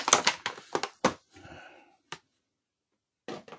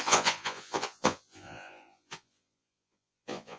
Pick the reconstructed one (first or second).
second